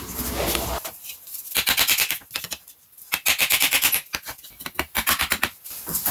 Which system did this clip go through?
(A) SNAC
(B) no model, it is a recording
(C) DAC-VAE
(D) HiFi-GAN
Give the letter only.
B